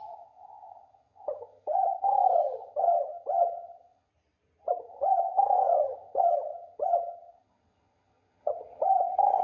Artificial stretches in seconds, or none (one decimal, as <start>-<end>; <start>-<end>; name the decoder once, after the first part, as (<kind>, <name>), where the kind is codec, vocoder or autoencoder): 0.0-4.1 (vocoder, HiFi-GAN); 4.8-9.4